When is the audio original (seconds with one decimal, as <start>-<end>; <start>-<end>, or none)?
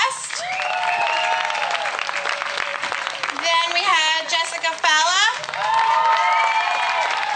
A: 0.0-2.7; 3.4-7.4